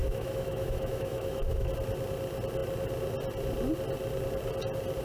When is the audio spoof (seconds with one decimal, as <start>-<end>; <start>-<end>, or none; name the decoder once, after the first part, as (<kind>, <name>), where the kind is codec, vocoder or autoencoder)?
0.0-1.7 (autoencoder, DAC-VAE)

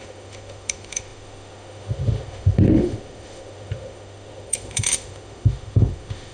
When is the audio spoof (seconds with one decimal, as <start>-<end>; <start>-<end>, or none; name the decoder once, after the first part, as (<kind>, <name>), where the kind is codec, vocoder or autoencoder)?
0.0-6.3 (autoencoder, DAC-VAE)

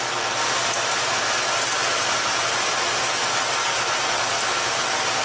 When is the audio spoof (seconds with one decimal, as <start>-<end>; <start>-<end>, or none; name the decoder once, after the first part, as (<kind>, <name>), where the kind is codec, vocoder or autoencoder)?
none

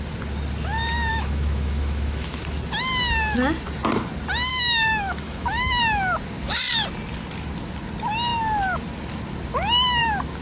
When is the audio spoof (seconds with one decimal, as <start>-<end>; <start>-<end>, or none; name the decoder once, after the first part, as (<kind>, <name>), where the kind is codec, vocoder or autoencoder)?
1.1-2.4 (autoencoder, DAC-VAE); 4.5-5.8

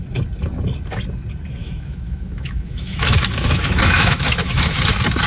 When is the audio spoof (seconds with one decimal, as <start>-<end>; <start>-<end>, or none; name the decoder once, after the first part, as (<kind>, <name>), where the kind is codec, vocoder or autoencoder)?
1.6-4.8 (autoencoder, DAC-VAE)

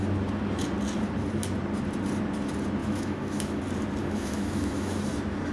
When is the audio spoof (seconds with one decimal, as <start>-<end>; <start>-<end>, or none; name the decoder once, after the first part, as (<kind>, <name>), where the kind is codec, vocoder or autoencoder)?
2.8-3.6 (autoencoder, DAC-VAE); 4.0-5.0